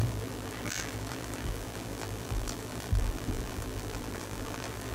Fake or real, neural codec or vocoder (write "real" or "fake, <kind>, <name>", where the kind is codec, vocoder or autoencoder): fake, vocoder, BigVGAN v2